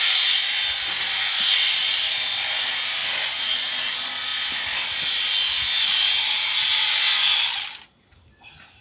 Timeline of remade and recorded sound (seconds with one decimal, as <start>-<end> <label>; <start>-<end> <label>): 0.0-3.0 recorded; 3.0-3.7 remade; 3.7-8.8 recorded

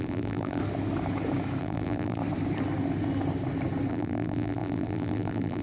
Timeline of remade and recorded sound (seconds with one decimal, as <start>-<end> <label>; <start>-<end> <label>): 0.0-0.6 remade; 0.6-1.6 recorded; 1.6-2.2 remade; 2.2-3.9 recorded; 3.9-5.6 remade

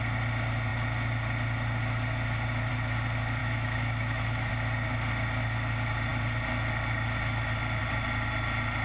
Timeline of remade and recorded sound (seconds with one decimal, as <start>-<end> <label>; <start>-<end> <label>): 0.0-3.4 recorded; 3.4-4.5 remade; 4.5-8.8 recorded

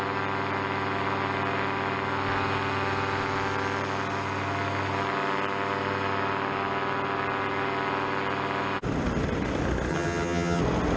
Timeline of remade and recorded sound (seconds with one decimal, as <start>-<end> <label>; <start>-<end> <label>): 0.0-9.9 recorded; 9.9-10.6 remade; 10.6-11.0 recorded

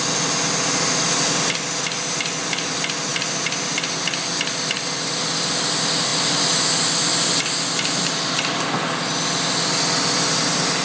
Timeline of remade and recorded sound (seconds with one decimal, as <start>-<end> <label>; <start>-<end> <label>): 0.0-10.8 recorded